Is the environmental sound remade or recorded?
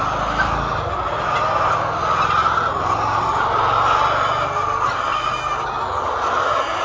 recorded